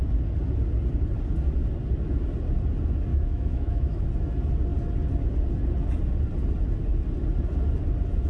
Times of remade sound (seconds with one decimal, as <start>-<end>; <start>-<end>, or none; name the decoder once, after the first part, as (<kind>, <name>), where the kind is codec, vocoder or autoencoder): 3.1-4.0 (autoencoder, DAC-VAE)